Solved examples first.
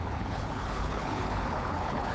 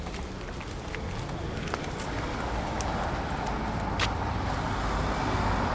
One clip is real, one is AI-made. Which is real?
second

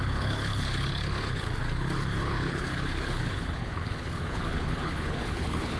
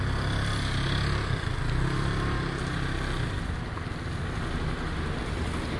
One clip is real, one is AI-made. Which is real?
second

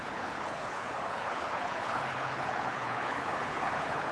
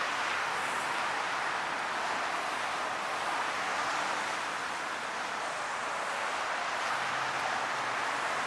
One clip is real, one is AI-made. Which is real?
second